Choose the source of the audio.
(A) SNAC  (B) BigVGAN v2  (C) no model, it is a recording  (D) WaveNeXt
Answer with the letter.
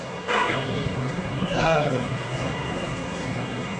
A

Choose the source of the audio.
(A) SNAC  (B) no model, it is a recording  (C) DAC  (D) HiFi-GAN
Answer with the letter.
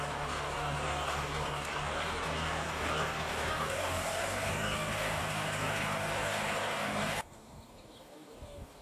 C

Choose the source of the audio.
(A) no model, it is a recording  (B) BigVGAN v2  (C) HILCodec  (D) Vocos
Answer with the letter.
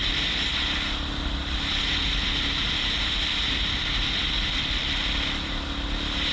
A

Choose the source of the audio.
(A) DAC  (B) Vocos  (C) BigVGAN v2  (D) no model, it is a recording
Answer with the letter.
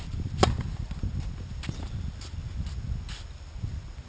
D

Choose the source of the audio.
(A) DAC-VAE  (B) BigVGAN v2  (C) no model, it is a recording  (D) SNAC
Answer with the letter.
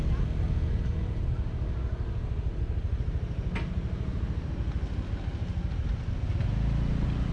C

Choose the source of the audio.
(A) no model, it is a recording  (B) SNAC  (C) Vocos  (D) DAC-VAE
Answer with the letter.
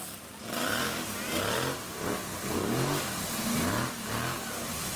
A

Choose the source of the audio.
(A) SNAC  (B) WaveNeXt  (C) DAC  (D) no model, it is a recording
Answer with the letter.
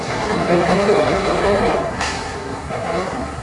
A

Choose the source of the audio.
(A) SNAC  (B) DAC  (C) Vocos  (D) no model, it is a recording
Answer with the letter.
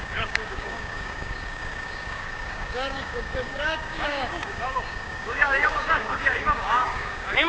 B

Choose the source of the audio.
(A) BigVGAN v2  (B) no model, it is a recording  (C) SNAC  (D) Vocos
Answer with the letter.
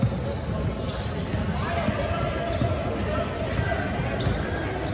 B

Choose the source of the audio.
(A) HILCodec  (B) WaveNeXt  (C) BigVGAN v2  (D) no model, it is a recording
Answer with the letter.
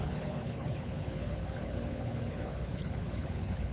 A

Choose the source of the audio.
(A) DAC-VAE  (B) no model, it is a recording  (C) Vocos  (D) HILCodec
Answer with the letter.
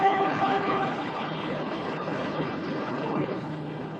D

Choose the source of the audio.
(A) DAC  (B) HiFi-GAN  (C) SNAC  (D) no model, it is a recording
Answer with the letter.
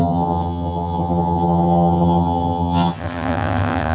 B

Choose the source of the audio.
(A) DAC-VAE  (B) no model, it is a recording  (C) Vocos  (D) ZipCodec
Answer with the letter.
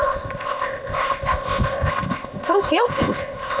D